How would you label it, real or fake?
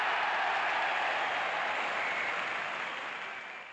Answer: real